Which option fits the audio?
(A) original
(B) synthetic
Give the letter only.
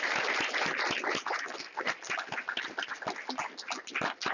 A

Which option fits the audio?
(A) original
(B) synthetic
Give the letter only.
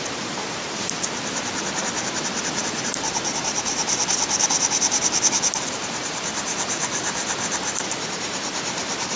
B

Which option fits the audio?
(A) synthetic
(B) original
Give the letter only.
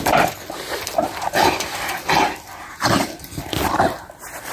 B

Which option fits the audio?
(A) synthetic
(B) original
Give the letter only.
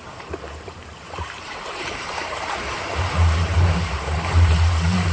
A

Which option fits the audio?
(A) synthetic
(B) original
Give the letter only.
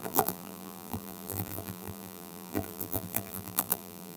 A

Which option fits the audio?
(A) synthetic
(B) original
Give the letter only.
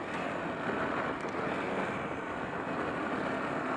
B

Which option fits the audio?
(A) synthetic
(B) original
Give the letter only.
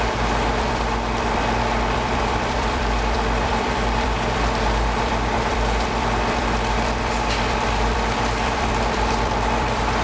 A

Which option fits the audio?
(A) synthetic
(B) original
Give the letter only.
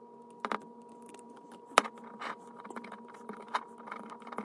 B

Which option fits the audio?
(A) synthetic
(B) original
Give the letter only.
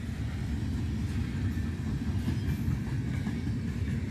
B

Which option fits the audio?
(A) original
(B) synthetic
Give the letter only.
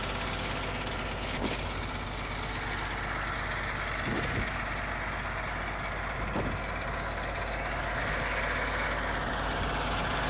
A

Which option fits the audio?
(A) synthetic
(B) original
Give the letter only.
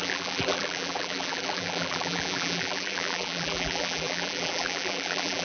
A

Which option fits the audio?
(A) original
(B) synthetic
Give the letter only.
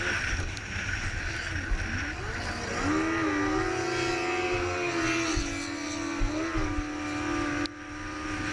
A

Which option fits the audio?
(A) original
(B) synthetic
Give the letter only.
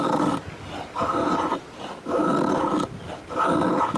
A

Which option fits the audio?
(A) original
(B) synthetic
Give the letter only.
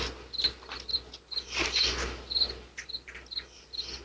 A